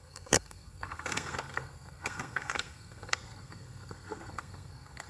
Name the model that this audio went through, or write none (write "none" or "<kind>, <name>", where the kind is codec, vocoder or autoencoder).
codec, SNAC